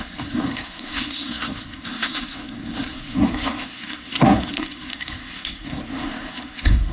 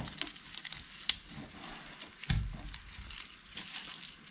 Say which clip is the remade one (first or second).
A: first